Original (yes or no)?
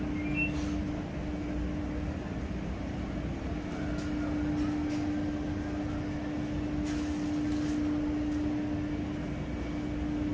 yes